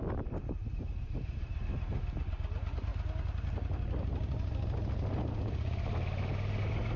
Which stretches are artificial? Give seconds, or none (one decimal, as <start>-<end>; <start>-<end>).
none